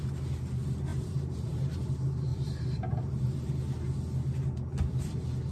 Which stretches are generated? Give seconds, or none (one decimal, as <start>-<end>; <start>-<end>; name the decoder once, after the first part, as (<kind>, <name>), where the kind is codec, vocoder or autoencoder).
0.9-1.9 (vocoder, BigVGAN v2); 2.3-3.5